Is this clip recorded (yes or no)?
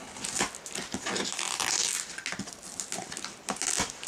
yes